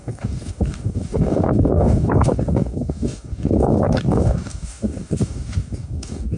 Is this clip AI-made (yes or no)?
yes